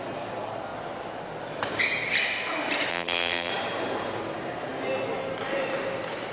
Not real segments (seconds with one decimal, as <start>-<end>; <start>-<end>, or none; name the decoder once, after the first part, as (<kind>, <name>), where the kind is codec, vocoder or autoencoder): 2.9-3.5 (vocoder, BigVGAN v2)